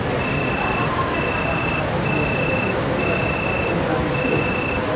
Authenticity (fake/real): real